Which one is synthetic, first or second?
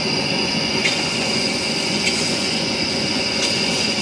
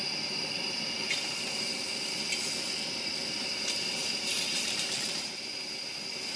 first